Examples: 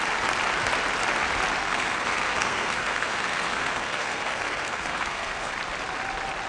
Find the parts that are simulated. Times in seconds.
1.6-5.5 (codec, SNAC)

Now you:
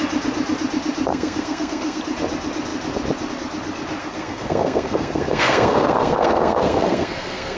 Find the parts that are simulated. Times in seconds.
1.1-2.0 (codec, SNAC); 4.0-7.6

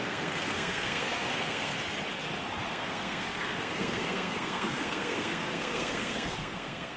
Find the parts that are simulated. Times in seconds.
0.0-1.7 (codec, SNAC); 2.7-7.0

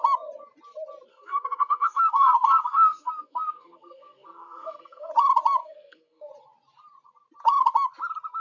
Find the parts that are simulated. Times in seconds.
1.1-5.1 (codec, SNAC); 5.6-6.3

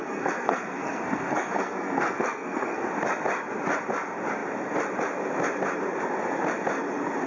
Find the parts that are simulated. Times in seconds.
0.0-2.9 (codec, SNAC)

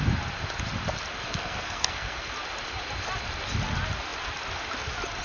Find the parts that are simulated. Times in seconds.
1.1-2.3 (codec, SNAC)

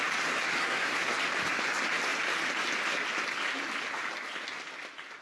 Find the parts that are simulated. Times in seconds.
0.6-1.1 (codec, SNAC)